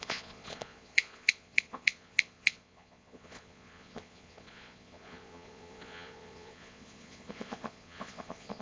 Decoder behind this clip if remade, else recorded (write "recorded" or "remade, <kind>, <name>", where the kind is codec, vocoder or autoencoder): remade, vocoder, Vocos